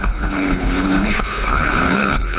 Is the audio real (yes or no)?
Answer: no